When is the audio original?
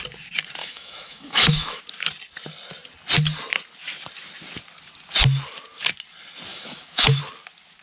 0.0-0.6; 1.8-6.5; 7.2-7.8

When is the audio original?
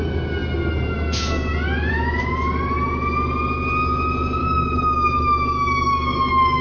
0.0-4.4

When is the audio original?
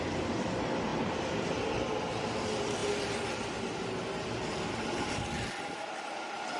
2.8-5.2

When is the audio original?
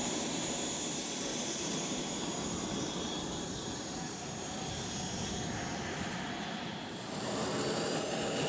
0.0-1.3; 4.9-8.5